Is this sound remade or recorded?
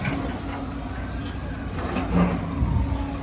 recorded